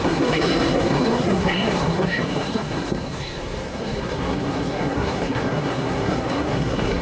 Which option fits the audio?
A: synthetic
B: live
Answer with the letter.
A